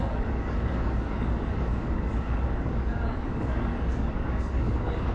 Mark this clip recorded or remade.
remade